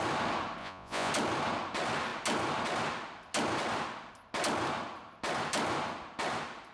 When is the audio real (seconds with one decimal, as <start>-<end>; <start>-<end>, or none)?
0.0-0.6; 1.1-6.7